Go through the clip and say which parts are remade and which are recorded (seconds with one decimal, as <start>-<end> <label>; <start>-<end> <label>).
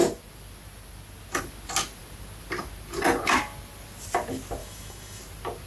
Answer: 0.0-4.6 recorded; 4.6-5.2 remade; 5.2-5.7 recorded